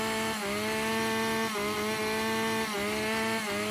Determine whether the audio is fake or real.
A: real